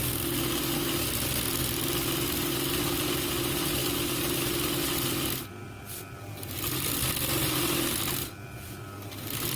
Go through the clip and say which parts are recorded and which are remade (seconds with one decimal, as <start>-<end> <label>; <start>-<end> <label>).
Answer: 0.0-9.6 recorded